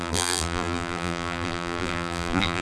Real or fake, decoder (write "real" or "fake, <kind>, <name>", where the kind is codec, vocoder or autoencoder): fake, vocoder, BigVGAN v2